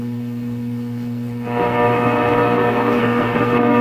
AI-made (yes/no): yes